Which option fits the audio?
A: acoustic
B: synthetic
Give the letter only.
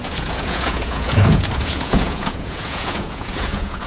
B